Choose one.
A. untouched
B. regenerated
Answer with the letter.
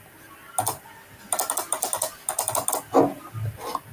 A